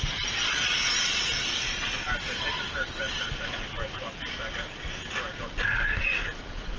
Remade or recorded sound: recorded